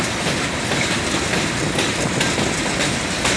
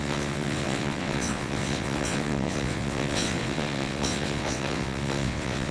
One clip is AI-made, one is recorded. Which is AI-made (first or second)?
second